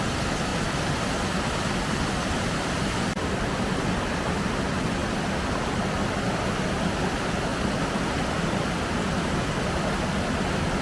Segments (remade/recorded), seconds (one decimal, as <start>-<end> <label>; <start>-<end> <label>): 0.0-0.5 recorded; 0.5-3.9 remade; 3.9-7.5 recorded; 7.5-9.1 remade; 9.1-10.8 recorded